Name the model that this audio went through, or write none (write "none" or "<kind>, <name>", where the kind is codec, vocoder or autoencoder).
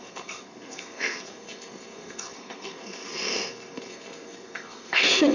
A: codec, SNAC